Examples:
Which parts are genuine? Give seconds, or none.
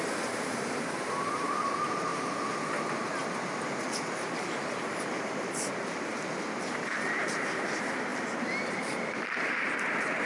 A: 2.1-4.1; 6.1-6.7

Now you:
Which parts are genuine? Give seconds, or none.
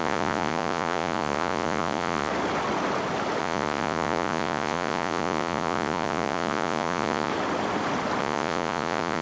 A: 2.3-3.4; 7.3-8.2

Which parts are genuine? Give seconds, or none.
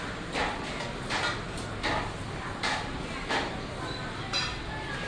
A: 0.0-0.4; 3.5-5.1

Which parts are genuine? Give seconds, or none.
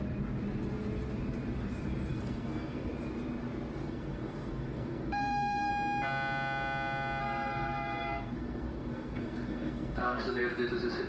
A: 0.0-2.1; 2.9-3.8; 5.7-7.2; 10.4-11.1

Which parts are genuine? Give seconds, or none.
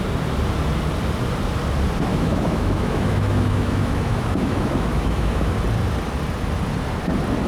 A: 0.0-2.1; 5.6-7.5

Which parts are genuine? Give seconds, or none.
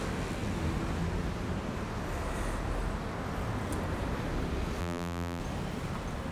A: 0.0-4.8; 5.4-6.3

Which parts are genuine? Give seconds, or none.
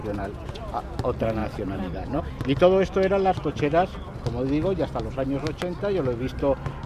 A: 0.6-1.4; 2.2-6.9